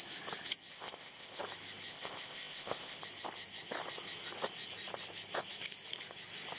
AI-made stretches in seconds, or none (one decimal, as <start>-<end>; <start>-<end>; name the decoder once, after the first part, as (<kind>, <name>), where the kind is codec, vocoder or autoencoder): 0.7-1.4 (codec, ZipCodec); 1.9-3.0